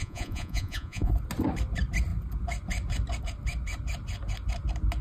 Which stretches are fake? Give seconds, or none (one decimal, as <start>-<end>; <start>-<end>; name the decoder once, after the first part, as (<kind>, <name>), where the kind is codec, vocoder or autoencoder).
0.0-1.1 (vocoder, Vocos)